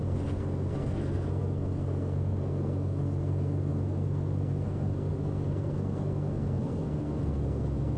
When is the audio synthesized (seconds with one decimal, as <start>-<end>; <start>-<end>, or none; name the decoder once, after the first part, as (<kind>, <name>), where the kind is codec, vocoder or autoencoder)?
0.0-8.0 (codec, SNAC)